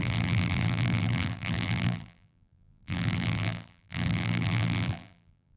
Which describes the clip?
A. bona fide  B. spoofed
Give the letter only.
B